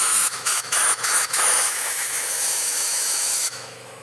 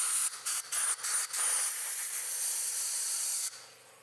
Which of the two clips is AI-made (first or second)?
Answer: first